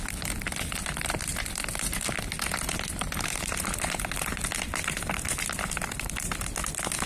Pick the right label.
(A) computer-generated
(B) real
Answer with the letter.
B